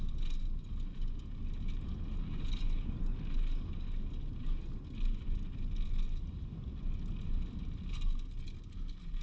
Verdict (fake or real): real